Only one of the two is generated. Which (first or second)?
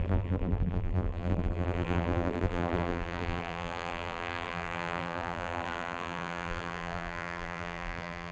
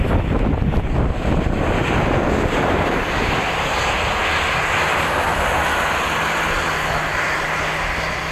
first